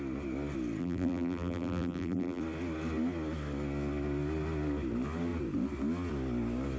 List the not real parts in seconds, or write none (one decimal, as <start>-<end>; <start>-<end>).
0.8-2.4